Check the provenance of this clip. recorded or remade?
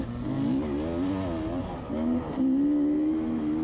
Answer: recorded